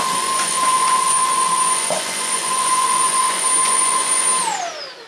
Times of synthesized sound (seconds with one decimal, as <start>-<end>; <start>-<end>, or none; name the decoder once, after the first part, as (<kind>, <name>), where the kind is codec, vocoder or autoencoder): 0.0-4.3 (vocoder, Vocos)

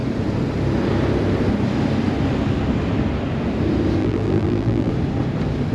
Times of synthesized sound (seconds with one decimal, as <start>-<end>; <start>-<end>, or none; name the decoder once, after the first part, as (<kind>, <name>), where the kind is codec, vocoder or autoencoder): 4.0-4.9 (vocoder, BigVGAN v2)

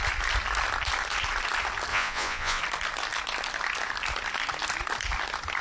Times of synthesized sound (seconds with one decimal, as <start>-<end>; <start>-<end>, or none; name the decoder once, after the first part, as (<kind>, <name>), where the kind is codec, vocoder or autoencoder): 1.9-2.6 (vocoder, Vocos)

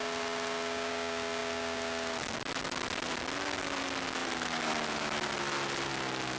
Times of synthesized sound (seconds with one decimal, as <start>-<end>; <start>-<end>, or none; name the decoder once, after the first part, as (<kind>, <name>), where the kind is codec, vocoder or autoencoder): 4.2-5.9 (vocoder, BigVGAN v2)

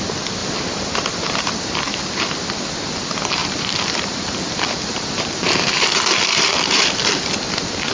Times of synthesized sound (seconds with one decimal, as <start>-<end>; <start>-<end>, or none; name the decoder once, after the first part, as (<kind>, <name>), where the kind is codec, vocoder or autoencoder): 0.4-2.3 (vocoder, BigVGAN v2); 3.4-7.1